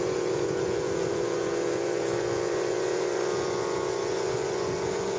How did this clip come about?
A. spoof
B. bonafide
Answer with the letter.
A